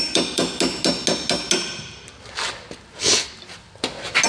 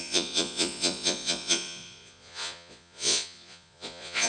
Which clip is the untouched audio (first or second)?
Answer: first